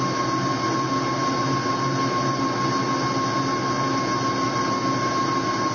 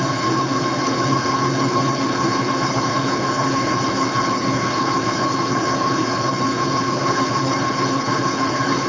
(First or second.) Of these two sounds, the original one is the first